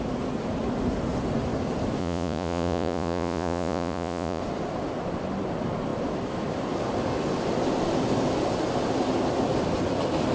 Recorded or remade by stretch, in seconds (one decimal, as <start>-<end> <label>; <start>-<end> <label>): 0.0-2.0 recorded; 2.0-4.4 remade; 4.4-10.3 recorded